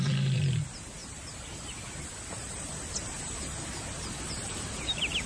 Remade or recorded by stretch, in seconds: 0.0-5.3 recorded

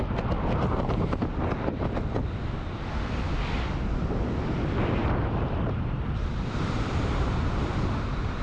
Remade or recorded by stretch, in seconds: 0.0-5.0 recorded; 5.0-7.7 remade; 7.7-8.4 recorded

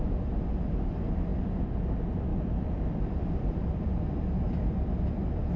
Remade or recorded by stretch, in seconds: 0.0-5.6 remade